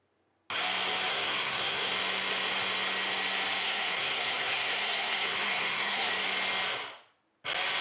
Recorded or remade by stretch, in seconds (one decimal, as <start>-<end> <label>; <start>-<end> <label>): 0.0-1.1 recorded; 1.1-1.9 remade; 1.9-3.6 recorded; 3.6-6.1 remade; 6.1-7.8 recorded